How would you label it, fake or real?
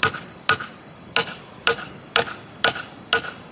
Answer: real